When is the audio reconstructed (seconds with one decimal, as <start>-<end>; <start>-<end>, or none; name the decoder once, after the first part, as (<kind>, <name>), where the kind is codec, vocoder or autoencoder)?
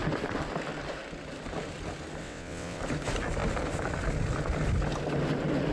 2.2-2.8 (vocoder, WaveNeXt)